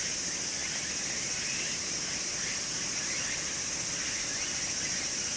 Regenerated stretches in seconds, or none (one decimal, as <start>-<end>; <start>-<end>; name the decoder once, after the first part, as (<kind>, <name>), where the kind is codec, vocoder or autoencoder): none